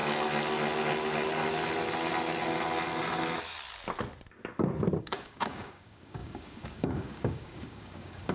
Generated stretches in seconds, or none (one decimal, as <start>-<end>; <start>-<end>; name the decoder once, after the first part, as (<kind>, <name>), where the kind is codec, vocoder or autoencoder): 5.0-8.3 (codec, DAC)

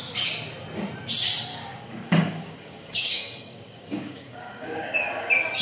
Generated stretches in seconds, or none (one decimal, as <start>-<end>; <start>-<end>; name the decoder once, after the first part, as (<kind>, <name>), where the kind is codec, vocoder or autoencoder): 1.5-4.9 (codec, DAC)

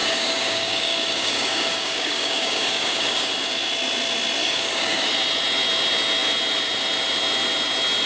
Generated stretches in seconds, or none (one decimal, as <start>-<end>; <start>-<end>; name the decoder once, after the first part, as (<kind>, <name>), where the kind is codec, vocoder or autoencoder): 0.0-3.3 (codec, DAC); 4.4-5.1

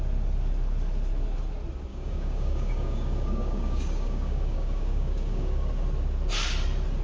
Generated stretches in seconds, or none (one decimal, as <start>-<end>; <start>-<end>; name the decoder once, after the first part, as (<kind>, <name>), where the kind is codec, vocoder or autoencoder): 1.9-5.7 (codec, DAC)

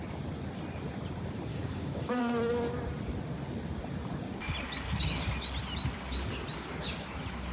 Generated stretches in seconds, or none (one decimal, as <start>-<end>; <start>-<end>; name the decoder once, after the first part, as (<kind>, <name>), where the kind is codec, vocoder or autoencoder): 1.5-2.2 (codec, DAC)

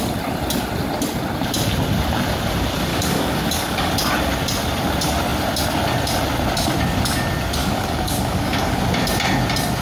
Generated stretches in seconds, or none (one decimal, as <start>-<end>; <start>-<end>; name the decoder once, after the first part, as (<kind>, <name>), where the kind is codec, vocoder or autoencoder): 2.9-3.9 (codec, DAC); 7.6-8.8